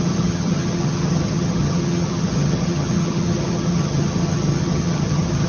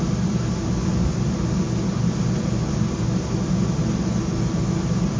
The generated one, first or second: first